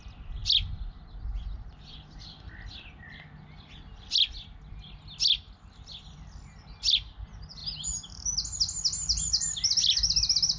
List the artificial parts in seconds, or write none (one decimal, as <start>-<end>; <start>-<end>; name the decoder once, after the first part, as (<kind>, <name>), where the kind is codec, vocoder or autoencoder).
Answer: none